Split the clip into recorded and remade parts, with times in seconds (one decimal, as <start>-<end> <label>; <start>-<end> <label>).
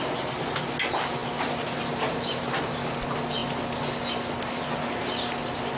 0.0-5.8 recorded